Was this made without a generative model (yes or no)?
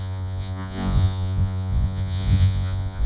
no